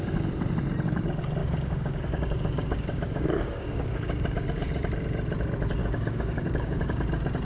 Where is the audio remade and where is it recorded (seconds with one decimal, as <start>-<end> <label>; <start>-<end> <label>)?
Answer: 0.0-1.4 recorded; 1.4-4.7 remade; 4.7-5.8 recorded; 5.8-7.0 remade; 7.0-7.4 recorded